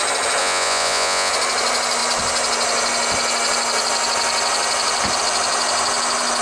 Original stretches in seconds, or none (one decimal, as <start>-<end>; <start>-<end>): 0.0-0.4; 1.3-6.4